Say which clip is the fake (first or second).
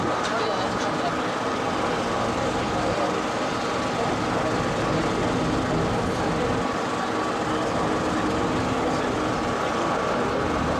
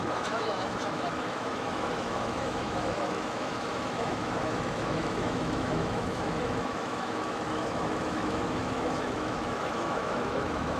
second